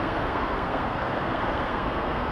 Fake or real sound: fake